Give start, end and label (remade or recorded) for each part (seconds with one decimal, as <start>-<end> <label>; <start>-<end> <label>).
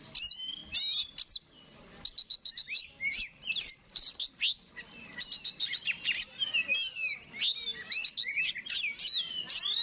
0.0-9.8 recorded